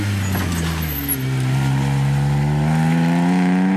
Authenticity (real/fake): real